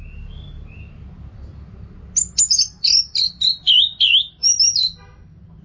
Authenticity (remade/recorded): recorded